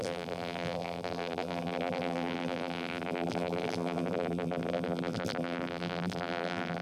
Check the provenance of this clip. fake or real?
fake